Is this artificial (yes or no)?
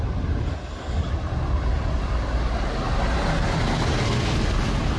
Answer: no